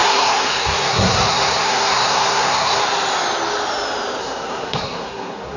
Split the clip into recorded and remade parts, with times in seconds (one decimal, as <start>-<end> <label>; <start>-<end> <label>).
0.0-2.8 remade; 2.8-4.2 recorded; 4.2-5.6 remade